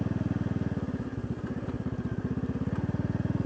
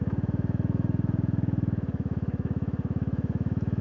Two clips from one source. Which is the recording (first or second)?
first